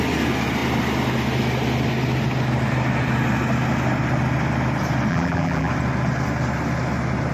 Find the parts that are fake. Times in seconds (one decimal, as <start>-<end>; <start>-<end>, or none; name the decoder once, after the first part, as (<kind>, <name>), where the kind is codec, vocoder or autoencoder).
5.1-5.7 (vocoder, BigVGAN v2)